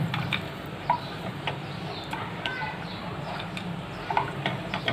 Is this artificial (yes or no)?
yes